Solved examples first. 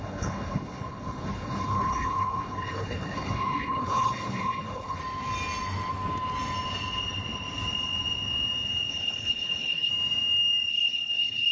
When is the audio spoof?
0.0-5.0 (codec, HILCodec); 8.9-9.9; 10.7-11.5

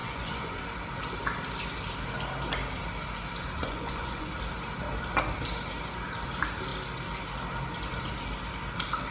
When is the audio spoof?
0.0-0.6 (vocoder, Vocos); 3.6-4.3